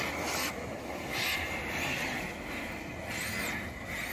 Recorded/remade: recorded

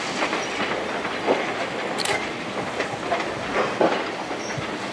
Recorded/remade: recorded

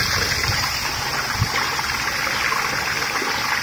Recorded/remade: recorded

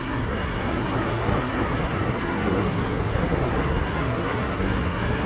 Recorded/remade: remade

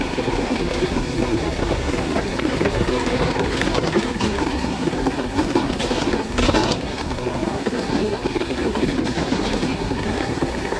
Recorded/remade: remade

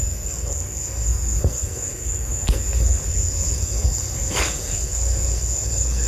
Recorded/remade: remade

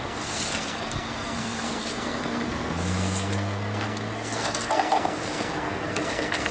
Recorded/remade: remade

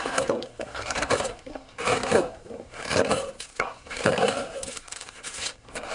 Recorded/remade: remade